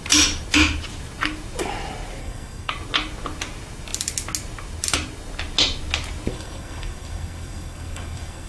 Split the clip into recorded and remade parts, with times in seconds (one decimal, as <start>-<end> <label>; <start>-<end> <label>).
0.0-2.2 recorded; 2.2-2.7 remade; 2.7-6.3 recorded; 6.3-8.5 remade